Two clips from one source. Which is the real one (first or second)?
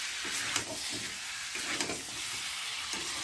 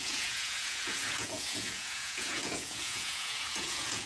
first